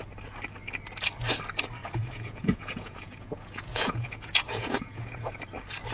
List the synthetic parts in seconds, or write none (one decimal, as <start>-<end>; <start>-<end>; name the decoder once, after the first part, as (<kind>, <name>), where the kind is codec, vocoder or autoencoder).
1.8-5.3 (vocoder, Vocos)